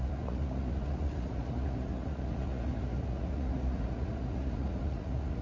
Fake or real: fake